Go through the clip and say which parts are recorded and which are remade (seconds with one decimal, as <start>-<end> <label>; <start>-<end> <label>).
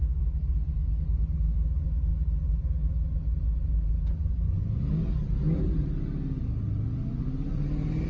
0.0-8.1 recorded